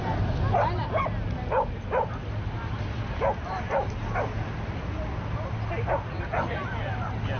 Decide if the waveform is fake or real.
real